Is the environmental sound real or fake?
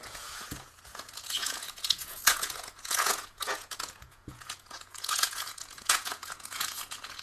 fake